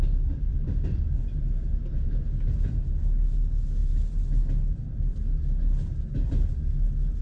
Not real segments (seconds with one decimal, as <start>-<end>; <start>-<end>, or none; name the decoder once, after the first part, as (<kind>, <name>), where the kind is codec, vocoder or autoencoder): 0.5-2.1 (vocoder, BigVGAN v2)